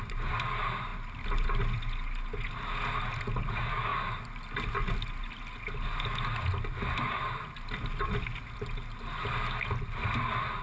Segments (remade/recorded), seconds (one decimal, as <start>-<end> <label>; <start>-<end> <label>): 0.0-10.6 recorded